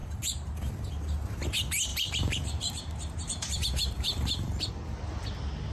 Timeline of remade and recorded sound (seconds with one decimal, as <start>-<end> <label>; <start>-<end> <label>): 0.0-0.7 remade; 0.7-1.9 recorded; 1.9-4.7 remade; 4.7-5.7 recorded